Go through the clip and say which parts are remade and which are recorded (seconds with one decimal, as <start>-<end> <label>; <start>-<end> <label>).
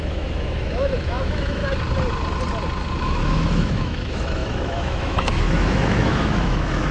0.0-1.6 remade; 1.6-3.0 recorded; 3.0-6.9 remade